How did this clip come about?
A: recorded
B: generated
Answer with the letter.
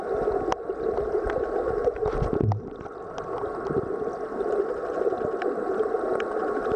A